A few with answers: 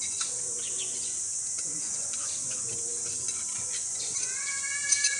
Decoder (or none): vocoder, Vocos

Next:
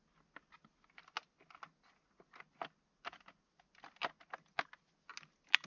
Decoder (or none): none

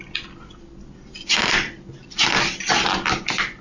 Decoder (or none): none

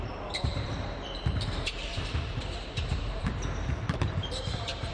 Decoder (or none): vocoder, BigVGAN v2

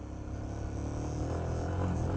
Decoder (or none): none